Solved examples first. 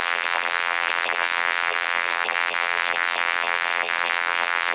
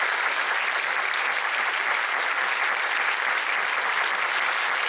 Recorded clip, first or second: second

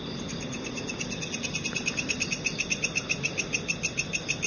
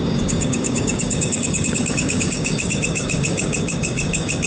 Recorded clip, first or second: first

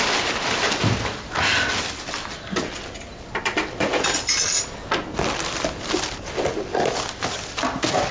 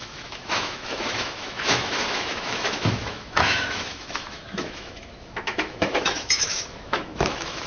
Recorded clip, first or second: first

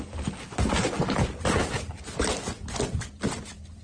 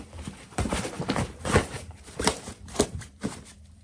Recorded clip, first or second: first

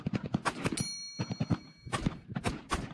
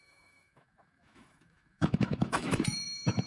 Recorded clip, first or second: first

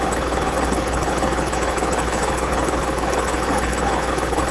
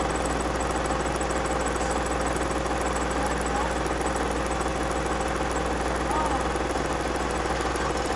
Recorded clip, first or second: second